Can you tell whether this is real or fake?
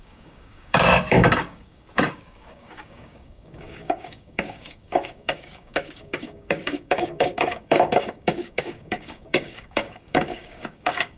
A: fake